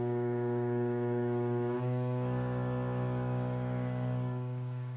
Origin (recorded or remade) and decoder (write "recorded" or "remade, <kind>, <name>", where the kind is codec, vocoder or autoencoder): remade, codec, DAC